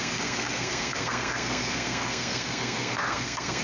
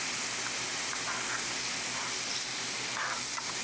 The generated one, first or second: first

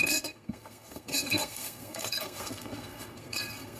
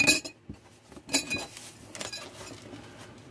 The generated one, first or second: first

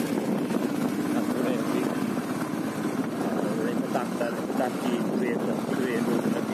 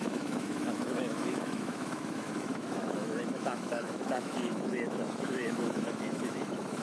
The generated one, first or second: second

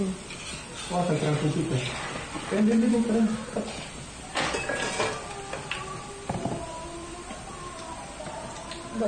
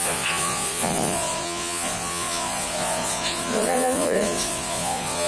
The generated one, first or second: second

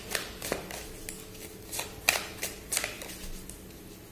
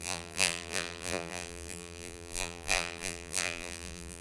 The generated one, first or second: second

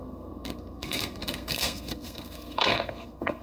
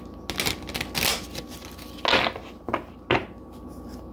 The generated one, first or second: first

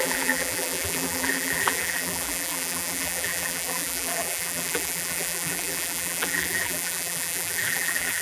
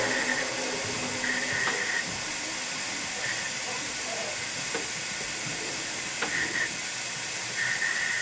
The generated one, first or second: first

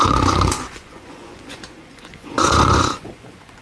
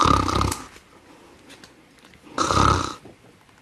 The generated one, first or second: first